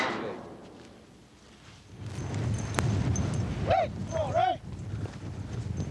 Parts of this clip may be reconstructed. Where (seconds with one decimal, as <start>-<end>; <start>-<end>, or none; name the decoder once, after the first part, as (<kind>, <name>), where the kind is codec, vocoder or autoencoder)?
none